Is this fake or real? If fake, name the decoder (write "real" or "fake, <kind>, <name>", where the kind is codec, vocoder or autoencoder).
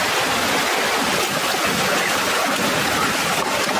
real